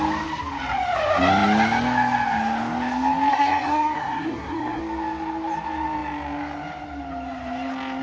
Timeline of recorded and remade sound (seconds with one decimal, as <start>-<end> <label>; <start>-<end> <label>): 0.0-3.3 recorded; 3.3-4.8 remade; 4.8-8.0 recorded